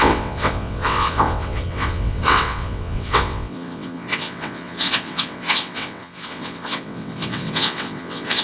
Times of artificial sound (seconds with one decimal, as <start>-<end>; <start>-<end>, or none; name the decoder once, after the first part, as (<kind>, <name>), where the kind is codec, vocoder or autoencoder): 0.0-8.4 (vocoder, WaveNeXt)